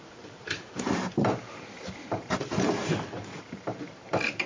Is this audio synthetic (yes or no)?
yes